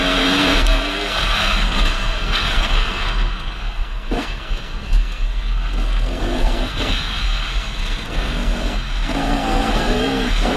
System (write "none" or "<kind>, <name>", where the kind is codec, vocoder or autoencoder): codec, SNAC